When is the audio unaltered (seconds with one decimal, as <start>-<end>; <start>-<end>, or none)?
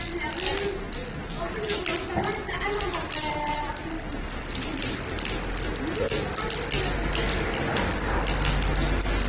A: 0.0-9.3